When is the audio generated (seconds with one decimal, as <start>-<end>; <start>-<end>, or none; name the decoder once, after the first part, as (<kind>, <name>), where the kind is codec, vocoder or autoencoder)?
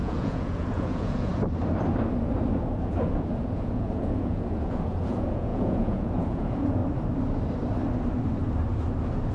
0.0-1.3 (vocoder, Vocos); 2.8-6.8